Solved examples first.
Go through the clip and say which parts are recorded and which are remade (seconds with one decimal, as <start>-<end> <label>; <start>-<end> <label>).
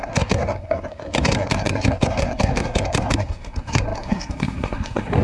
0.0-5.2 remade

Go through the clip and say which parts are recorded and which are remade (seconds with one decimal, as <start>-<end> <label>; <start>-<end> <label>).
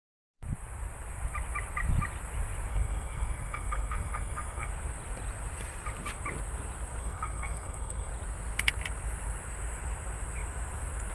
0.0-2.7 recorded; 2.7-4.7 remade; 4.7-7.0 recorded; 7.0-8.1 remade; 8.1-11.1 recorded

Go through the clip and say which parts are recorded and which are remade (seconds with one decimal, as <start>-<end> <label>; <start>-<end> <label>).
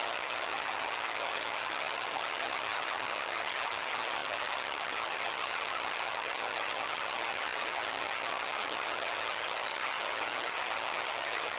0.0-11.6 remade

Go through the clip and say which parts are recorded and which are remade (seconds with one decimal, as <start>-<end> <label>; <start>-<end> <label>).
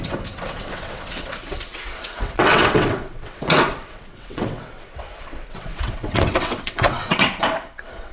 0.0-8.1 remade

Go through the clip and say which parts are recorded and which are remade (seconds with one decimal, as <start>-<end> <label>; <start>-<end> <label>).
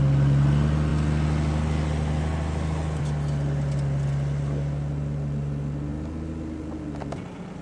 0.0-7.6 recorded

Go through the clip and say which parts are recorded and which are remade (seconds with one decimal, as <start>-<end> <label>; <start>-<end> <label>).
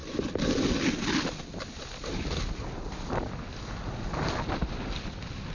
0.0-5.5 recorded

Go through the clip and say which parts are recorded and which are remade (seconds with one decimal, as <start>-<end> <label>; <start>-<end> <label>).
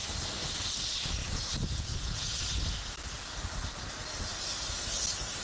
0.0-1.2 recorded; 1.2-2.4 remade; 2.4-5.4 recorded